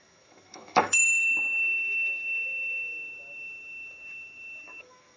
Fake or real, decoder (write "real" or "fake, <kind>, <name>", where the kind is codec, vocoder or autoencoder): fake, autoencoder, DAC-VAE